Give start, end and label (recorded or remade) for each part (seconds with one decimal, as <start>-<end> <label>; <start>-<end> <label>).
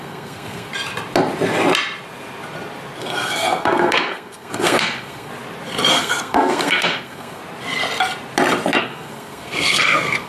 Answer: 0.0-0.7 remade; 0.7-3.0 recorded; 3.0-5.3 remade; 5.3-5.9 recorded; 5.9-7.4 remade; 7.4-8.8 recorded; 8.8-10.3 remade